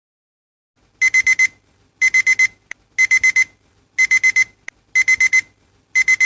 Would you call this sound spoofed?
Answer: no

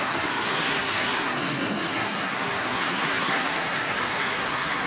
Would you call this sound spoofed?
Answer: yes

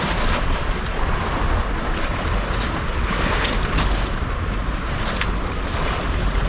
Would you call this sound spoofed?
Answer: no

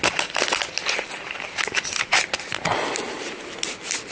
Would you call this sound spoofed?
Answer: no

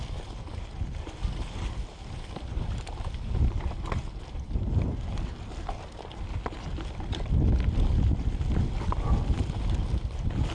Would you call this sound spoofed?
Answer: no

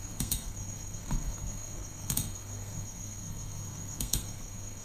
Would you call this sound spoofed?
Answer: yes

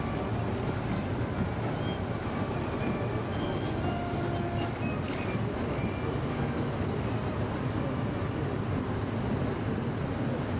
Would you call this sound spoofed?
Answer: no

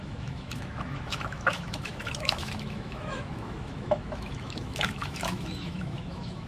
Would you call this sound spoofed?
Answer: yes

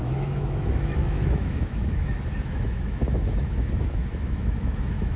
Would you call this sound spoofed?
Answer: yes